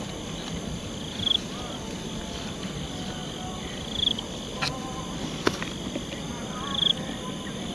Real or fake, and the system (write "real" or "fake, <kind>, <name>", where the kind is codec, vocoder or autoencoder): real